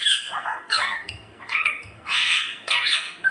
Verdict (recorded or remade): remade